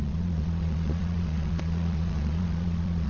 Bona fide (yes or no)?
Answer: no